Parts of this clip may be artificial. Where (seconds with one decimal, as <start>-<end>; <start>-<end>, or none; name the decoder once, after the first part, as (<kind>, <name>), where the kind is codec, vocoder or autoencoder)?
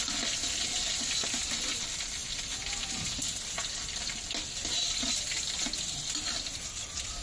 none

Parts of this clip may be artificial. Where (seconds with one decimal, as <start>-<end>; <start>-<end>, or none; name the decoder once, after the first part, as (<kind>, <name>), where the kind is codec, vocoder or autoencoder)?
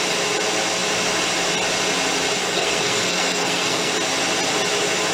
2.4-3.9 (codec, SNAC)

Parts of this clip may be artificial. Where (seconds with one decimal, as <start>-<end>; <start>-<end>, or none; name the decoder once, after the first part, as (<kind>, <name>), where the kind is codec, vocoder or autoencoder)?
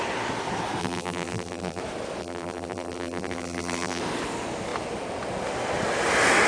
0.8-1.8 (vocoder, BigVGAN v2); 2.2-4.0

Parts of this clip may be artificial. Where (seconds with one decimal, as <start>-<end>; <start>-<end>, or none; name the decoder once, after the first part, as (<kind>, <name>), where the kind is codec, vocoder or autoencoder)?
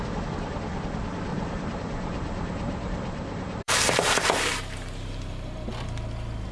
1.3-5.2 (vocoder, BigVGAN v2)